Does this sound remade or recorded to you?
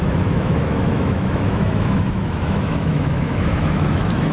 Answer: remade